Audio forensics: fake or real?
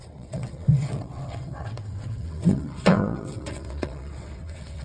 fake